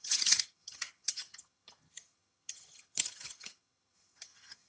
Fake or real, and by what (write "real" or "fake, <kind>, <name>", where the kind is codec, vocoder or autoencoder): fake, vocoder, HiFi-GAN